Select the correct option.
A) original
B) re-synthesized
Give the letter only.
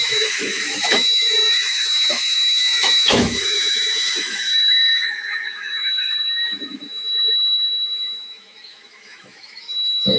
B